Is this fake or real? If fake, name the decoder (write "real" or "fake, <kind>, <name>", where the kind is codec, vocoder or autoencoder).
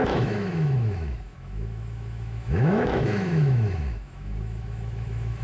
fake, autoencoder, DAC-VAE